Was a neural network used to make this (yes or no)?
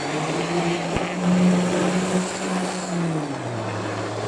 no